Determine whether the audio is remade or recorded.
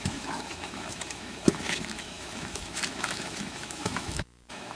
remade